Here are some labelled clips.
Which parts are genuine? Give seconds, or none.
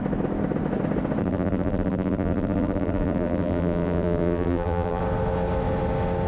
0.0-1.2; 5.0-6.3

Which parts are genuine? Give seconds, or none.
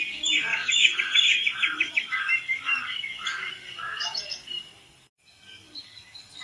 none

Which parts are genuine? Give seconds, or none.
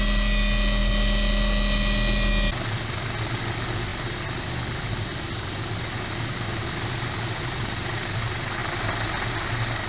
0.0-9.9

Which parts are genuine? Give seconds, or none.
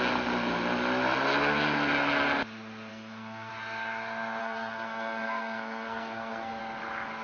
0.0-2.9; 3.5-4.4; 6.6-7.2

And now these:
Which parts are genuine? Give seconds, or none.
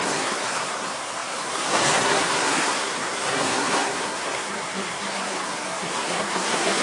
none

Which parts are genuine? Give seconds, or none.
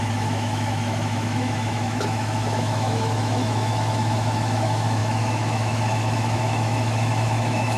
none